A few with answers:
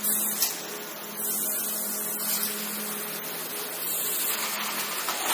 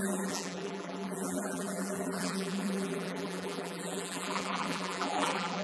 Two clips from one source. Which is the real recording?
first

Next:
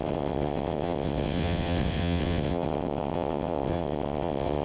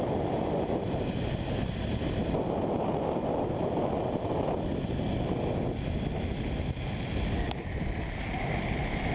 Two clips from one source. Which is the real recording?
second